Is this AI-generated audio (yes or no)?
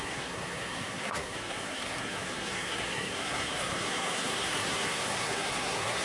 yes